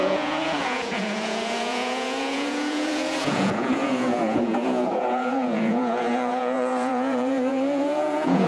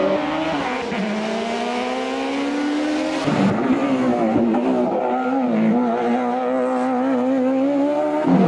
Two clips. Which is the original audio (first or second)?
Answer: second